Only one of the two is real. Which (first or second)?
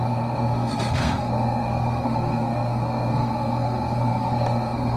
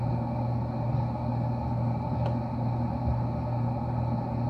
second